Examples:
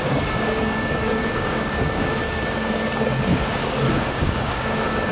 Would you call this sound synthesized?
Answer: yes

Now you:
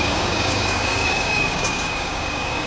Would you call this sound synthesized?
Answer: yes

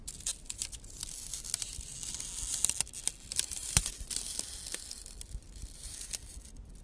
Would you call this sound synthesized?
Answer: no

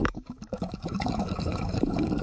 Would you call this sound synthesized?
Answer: yes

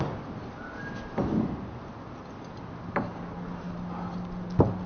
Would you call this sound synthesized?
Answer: no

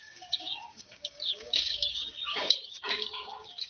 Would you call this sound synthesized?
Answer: yes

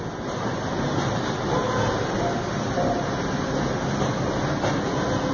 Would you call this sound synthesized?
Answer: no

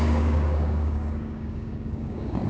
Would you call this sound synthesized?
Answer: yes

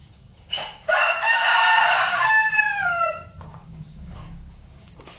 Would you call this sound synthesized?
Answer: yes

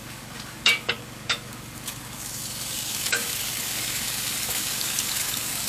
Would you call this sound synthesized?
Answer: yes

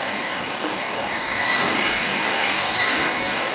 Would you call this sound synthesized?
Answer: yes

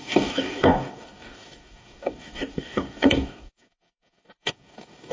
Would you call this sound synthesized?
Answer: yes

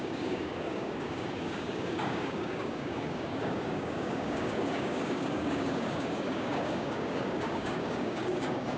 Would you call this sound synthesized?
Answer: yes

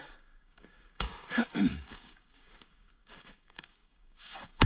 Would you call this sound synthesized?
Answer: yes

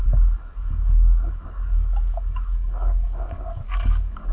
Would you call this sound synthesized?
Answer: yes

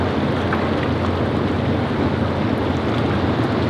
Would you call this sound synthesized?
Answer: no